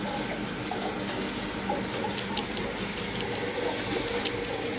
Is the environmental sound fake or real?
real